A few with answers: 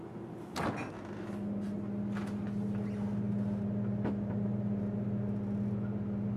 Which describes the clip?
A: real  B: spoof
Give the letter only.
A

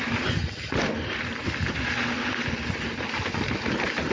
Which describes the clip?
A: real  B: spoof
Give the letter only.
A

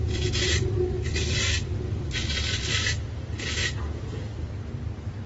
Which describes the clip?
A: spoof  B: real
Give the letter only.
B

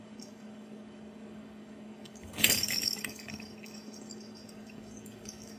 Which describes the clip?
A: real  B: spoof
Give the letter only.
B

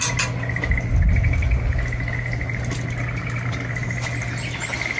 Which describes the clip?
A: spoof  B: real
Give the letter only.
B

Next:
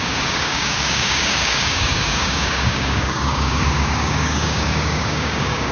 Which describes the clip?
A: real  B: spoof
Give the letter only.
B